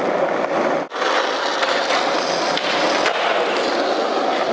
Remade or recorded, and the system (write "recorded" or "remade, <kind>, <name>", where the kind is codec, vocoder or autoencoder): recorded